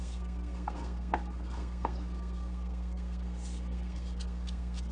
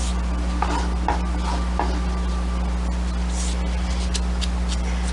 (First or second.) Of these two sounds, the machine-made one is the first